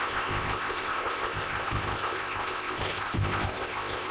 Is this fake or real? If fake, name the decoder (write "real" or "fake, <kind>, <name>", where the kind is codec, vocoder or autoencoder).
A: fake, codec, ZipCodec